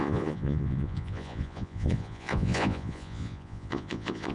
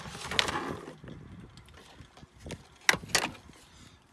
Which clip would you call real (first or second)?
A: second